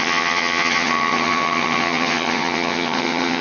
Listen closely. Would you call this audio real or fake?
fake